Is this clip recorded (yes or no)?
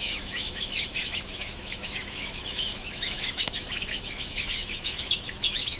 no